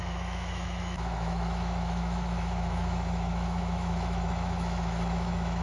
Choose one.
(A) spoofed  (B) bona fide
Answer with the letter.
A